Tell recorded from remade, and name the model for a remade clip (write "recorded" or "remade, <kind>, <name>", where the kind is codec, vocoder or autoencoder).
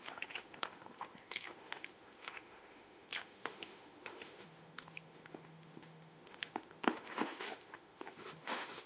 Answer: remade, autoencoder, DAC-VAE